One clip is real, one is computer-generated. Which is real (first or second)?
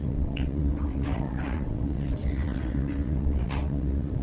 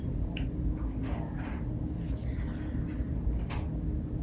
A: second